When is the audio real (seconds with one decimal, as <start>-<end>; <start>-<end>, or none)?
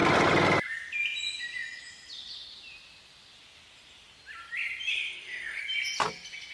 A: 0.0-4.9; 5.6-6.5